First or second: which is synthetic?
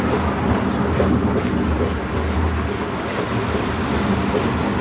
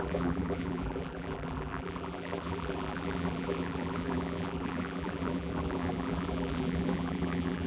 second